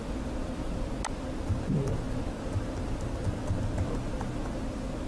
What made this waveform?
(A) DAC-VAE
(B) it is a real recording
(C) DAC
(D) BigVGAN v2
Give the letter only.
B